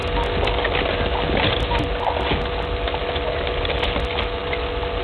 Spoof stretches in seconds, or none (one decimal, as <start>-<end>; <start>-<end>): none